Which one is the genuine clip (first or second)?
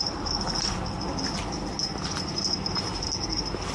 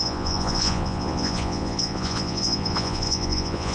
first